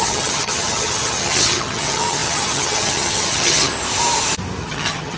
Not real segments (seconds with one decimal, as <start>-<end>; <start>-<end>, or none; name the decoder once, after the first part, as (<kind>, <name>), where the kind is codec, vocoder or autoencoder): 0.0-3.7 (vocoder, HiFi-GAN); 4.6-5.2